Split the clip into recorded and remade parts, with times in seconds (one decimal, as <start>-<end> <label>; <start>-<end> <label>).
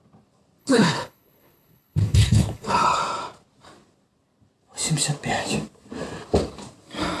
0.0-0.6 recorded; 0.6-3.0 remade; 3.0-7.2 recorded